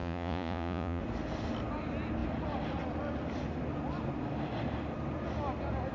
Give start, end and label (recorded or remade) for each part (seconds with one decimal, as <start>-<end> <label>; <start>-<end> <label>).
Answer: 0.0-1.0 remade; 1.0-5.9 recorded